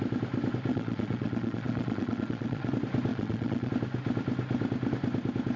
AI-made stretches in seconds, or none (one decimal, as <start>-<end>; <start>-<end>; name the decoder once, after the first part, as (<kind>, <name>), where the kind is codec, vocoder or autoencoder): 0.7-2.7 (vocoder, Vocos); 3.1-3.7